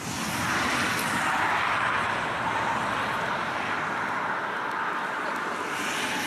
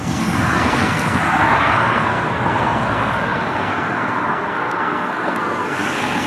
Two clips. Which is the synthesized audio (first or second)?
second